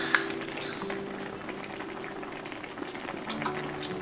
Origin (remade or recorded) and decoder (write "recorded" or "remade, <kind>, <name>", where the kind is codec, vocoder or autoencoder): recorded